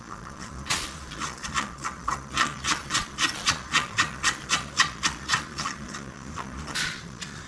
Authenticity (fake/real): fake